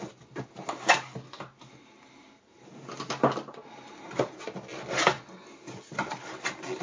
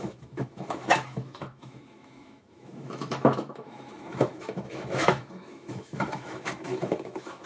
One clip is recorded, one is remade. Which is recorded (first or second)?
first